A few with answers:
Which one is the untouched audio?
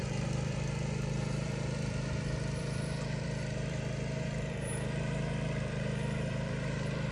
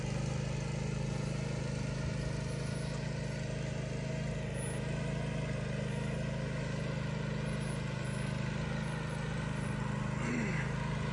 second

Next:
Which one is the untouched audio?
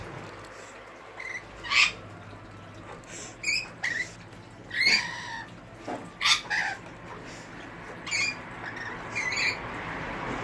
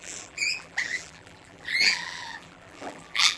first